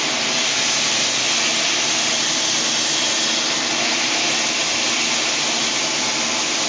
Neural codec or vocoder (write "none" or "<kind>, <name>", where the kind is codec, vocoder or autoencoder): none